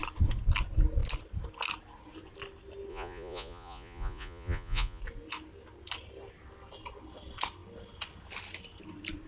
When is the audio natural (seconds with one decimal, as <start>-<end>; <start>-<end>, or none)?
0.0-2.9; 5.0-9.3